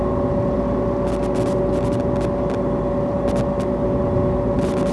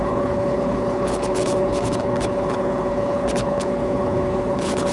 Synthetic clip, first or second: second